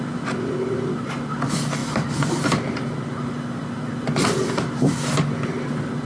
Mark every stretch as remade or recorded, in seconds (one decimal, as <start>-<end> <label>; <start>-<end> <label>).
0.0-6.0 recorded